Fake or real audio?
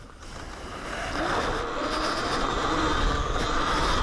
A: real